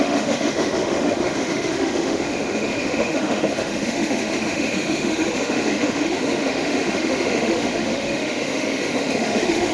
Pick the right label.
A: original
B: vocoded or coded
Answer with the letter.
B